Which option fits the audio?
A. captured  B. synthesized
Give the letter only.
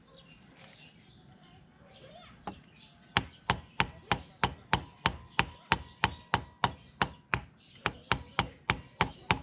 A